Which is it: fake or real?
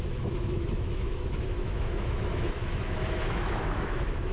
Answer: fake